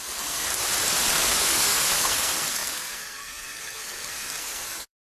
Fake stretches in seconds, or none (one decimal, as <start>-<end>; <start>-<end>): 0.0-0.5; 1.1-5.2